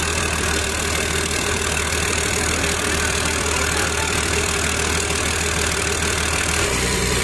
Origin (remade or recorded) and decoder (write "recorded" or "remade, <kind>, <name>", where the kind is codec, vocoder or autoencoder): remade, vocoder, BigVGAN v2